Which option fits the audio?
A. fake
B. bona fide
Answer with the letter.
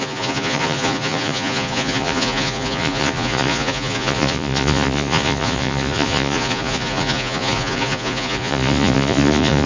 A